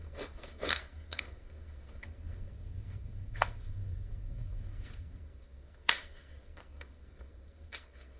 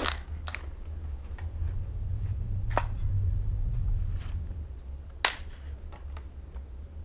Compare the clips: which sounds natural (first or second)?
second